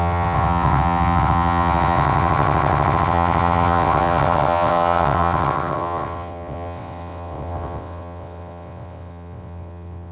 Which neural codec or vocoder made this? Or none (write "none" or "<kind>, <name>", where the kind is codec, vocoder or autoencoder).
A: vocoder, WaveNeXt